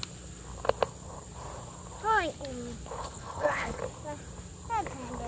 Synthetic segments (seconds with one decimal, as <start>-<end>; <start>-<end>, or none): 3.0-3.8